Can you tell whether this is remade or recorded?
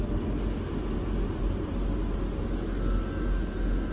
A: recorded